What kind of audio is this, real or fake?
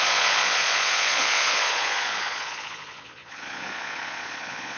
fake